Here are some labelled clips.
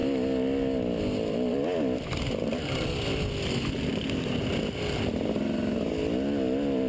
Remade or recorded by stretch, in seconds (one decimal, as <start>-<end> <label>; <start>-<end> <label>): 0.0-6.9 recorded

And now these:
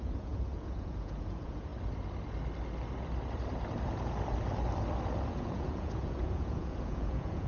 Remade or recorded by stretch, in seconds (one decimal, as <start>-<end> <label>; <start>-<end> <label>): 0.0-1.7 remade; 1.7-5.3 recorded; 5.3-7.5 remade

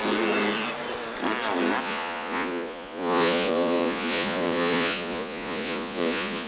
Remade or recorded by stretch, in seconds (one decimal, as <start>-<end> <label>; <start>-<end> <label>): 0.0-1.8 recorded; 1.8-6.5 remade

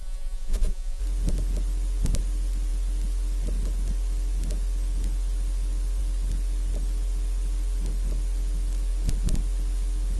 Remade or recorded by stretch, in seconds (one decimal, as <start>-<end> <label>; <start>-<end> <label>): 0.0-1.0 remade; 1.0-10.2 recorded

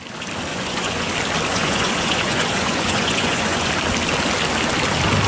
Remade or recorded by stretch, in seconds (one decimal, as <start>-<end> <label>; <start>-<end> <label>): 0.0-0.5 recorded; 0.5-1.1 remade; 1.1-1.5 recorded; 1.5-3.7 remade; 3.7-5.3 recorded